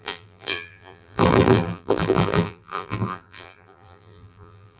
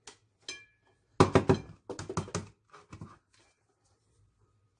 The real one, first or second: second